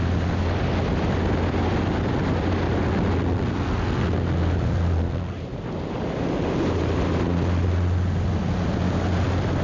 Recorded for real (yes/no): yes